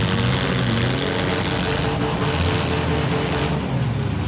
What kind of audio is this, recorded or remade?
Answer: recorded